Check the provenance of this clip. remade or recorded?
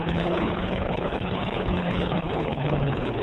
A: remade